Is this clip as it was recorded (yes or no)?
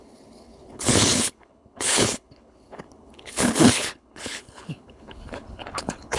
no